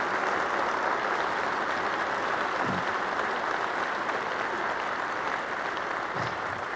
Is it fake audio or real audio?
real